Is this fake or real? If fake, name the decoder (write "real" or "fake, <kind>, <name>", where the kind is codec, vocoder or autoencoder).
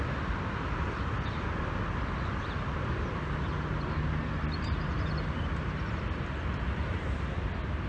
real